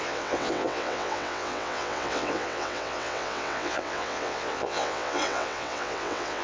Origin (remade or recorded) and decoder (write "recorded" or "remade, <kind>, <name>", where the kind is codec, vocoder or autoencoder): remade, vocoder, WaveNeXt